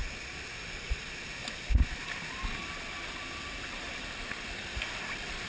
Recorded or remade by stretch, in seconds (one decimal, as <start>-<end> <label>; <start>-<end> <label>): 0.0-5.5 recorded